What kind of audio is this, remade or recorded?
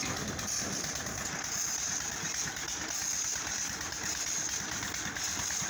recorded